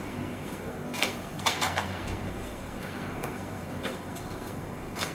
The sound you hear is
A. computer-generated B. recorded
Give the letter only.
A